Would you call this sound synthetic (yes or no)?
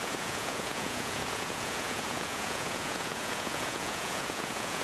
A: yes